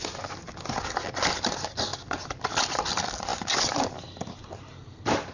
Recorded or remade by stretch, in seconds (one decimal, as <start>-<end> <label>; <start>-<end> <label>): 0.0-5.3 recorded